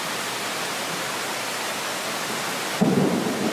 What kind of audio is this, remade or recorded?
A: recorded